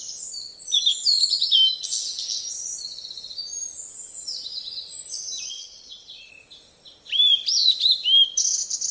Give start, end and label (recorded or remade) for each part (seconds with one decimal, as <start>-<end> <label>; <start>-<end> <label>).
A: 0.0-5.5 recorded; 5.5-6.3 remade; 6.3-8.9 recorded